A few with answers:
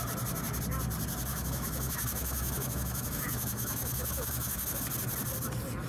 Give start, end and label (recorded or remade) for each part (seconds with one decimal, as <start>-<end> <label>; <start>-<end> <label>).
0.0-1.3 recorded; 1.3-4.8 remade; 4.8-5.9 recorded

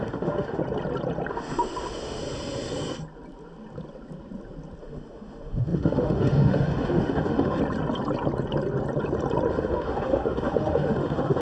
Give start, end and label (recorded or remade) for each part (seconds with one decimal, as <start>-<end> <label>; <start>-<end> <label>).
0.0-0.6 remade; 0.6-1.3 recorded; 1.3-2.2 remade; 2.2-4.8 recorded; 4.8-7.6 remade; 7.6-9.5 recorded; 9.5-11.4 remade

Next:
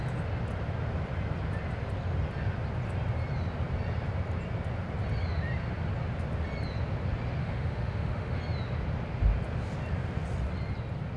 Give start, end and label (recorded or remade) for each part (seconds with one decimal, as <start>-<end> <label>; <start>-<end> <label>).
0.0-7.4 recorded; 7.4-8.4 remade; 8.4-11.2 recorded

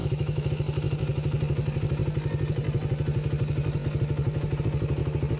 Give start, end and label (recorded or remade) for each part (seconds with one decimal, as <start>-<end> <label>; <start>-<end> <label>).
0.0-0.5 remade; 0.5-5.4 recorded

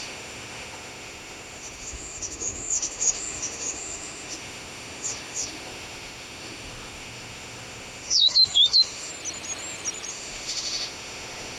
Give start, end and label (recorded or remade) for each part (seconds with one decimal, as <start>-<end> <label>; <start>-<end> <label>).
0.0-9.1 remade; 9.1-10.1 recorded; 10.1-11.6 remade